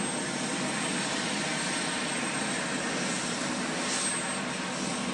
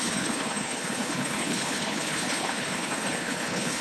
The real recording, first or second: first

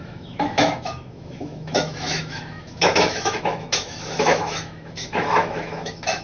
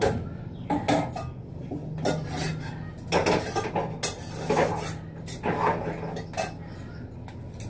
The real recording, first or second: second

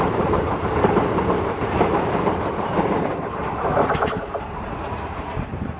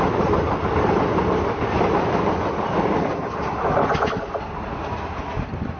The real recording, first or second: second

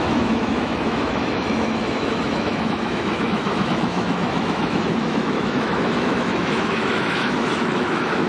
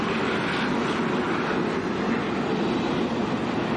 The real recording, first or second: second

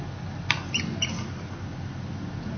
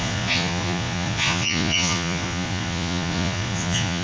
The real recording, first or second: first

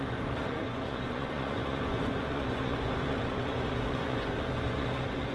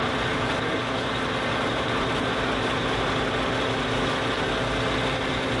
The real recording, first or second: second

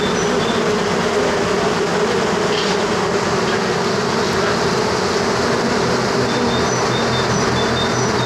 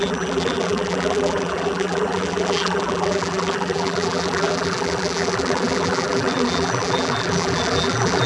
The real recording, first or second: first